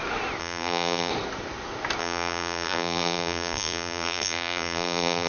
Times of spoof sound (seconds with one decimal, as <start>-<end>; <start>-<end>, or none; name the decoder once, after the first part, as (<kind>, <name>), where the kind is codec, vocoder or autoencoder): 0.4-1.1 (vocoder, BigVGAN v2); 2.0-5.3